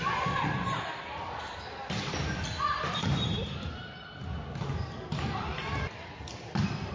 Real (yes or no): no